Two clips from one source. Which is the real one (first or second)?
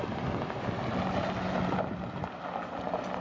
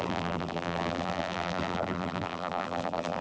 first